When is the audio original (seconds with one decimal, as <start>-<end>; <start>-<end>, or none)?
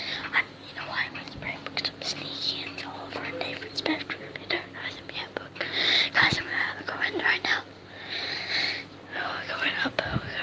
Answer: 0.0-10.4